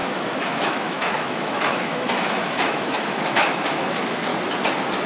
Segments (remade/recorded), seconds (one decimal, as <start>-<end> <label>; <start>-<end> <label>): 0.0-4.3 remade; 4.3-5.1 recorded